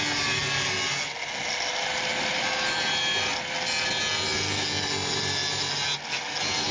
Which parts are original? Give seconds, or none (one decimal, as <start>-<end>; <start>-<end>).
0.0-6.7